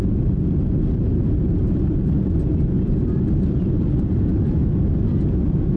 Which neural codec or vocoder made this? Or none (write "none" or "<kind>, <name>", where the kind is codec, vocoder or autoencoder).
none